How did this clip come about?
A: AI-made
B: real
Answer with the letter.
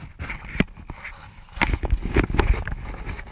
B